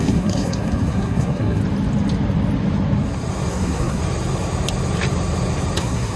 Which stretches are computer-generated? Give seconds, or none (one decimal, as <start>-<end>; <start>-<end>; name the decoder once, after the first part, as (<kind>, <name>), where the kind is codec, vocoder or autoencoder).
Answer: 0.0-1.6 (codec, SNAC); 3.5-4.0; 5.8-6.2